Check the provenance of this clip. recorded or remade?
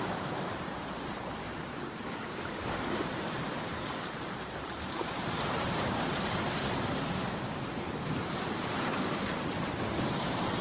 remade